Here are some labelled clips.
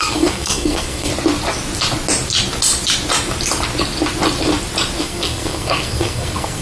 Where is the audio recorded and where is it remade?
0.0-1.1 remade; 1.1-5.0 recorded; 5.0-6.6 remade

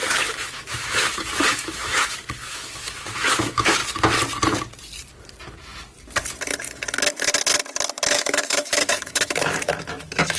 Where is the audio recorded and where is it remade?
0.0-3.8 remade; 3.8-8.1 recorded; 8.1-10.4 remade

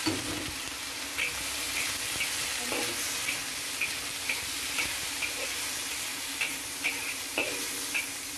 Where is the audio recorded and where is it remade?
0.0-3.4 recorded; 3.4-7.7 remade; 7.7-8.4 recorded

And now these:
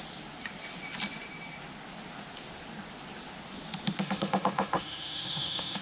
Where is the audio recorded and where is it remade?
0.0-4.0 recorded; 4.0-5.8 remade

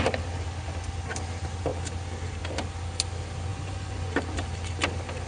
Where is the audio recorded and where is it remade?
0.0-3.5 recorded; 3.5-4.1 remade; 4.1-5.3 recorded